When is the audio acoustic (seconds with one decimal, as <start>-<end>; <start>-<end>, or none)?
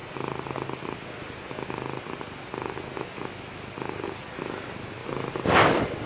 0.0-6.1